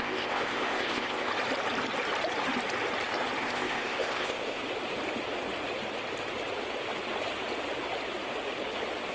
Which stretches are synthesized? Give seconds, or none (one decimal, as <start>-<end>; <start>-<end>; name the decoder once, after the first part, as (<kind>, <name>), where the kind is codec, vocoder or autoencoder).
0.0-1.3 (codec, ZipCodec); 3.4-4.6